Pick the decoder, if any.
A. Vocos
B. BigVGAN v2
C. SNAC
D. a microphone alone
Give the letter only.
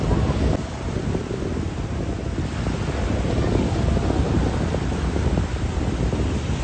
D